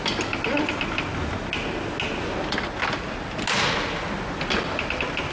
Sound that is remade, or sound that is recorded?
recorded